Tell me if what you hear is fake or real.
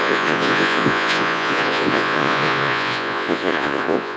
fake